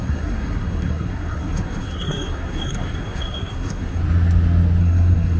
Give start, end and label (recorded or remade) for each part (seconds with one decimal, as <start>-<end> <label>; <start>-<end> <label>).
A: 0.0-4.0 remade; 4.0-4.8 recorded; 4.8-5.4 remade